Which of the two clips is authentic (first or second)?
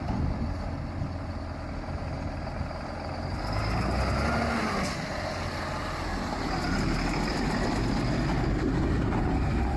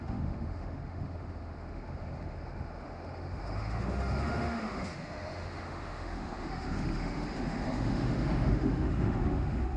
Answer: first